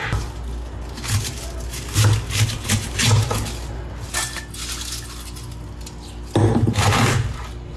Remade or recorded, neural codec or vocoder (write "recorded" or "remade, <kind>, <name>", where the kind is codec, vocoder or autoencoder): recorded